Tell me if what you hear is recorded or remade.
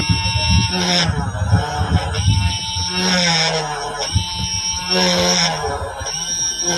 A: recorded